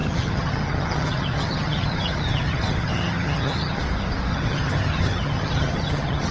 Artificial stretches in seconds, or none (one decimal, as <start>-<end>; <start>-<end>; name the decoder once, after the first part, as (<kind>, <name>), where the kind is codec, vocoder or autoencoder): 0.0-3.8 (vocoder, HiFi-GAN); 4.3-6.3